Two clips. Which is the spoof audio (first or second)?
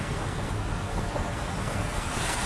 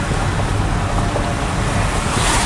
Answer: first